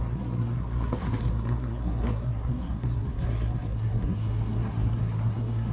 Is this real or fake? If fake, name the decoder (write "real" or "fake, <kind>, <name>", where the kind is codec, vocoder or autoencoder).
fake, codec, SNAC